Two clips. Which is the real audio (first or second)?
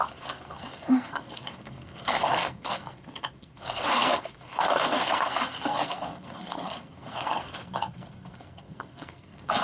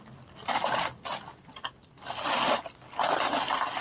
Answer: second